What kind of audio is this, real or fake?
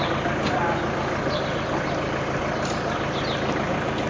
real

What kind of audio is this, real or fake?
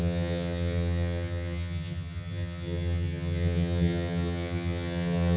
fake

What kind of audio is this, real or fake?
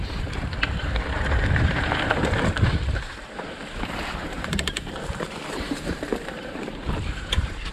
fake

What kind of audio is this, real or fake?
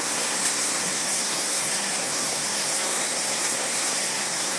fake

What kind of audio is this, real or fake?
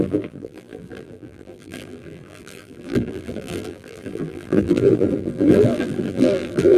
fake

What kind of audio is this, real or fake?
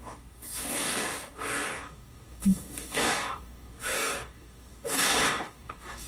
fake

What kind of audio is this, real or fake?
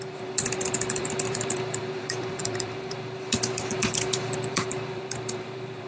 fake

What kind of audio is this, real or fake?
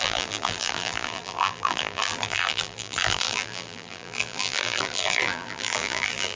fake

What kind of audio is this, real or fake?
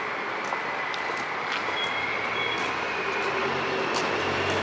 fake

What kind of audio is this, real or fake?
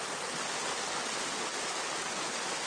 real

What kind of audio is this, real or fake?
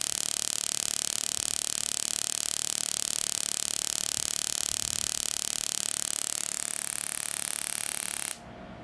real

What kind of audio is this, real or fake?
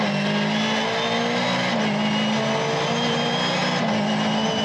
real